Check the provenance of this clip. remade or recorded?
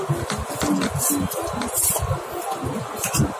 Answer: recorded